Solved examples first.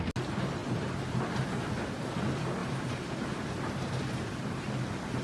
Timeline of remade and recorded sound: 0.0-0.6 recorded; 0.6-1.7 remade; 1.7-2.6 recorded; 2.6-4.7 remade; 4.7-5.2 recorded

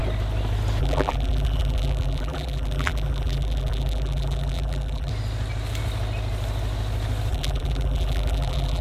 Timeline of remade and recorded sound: 0.0-0.8 recorded; 0.8-5.1 remade; 5.1-7.3 recorded; 7.3-8.8 remade